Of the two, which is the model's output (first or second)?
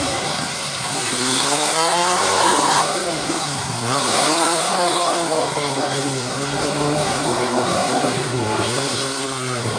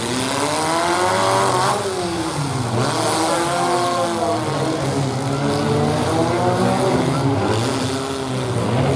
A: first